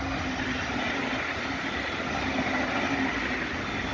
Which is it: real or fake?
real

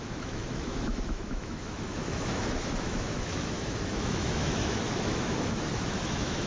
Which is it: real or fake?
fake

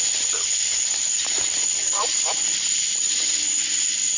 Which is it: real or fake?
real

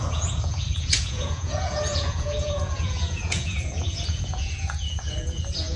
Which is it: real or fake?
fake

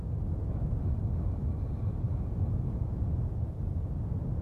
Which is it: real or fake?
real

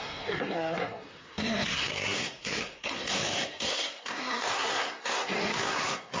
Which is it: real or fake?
fake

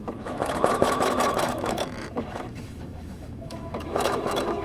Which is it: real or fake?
fake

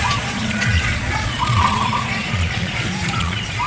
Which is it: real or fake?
fake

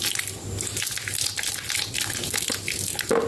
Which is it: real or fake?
real